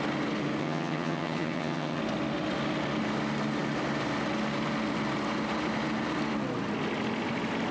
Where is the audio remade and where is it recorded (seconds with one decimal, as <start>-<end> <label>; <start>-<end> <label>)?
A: 0.0-0.6 recorded; 0.6-2.0 remade; 2.0-7.7 recorded

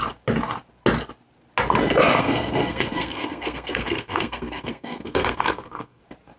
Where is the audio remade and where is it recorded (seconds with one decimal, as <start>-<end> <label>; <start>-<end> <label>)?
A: 0.0-2.2 recorded; 2.2-6.0 remade; 6.0-6.4 recorded

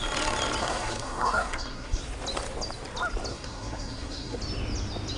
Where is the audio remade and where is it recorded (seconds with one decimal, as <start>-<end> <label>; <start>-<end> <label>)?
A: 0.0-0.6 recorded; 0.6-2.0 remade; 2.0-3.3 recorded; 3.3-4.4 remade; 4.4-5.2 recorded

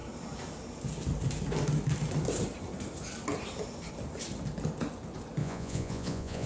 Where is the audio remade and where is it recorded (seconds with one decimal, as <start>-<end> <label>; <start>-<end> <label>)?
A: 0.0-5.4 recorded; 5.4-6.5 remade

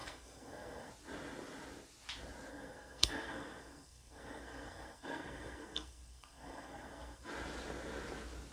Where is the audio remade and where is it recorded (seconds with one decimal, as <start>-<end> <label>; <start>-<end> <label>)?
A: 0.0-0.9 remade; 0.9-2.5 recorded; 2.5-7.3 remade; 7.3-8.5 recorded

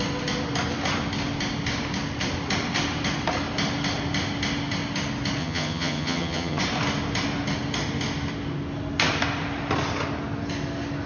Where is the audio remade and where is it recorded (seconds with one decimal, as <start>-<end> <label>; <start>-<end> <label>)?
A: 0.0-5.4 recorded; 5.4-6.6 remade; 6.6-11.1 recorded

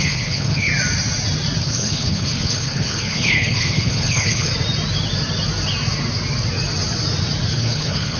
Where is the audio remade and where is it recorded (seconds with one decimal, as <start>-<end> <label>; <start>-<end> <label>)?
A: 0.0-0.7 remade; 0.7-1.6 recorded; 1.6-4.5 remade; 4.5-7.5 recorded; 7.5-8.2 remade

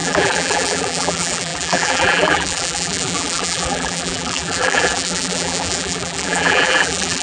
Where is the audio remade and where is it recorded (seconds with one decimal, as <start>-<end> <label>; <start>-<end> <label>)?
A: 0.0-7.2 remade